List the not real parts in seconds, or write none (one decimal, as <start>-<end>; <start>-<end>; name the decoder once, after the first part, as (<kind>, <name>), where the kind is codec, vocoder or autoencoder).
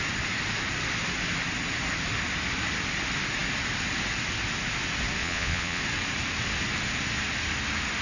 5.2-5.8 (vocoder, Vocos)